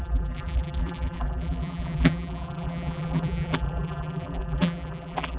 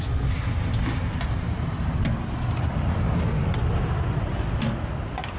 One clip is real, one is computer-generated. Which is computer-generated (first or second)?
first